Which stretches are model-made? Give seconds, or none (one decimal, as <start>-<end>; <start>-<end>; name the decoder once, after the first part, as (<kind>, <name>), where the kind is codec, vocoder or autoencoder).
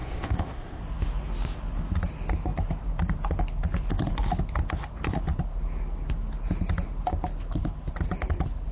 0.0-0.8 (codec, ZipCodec)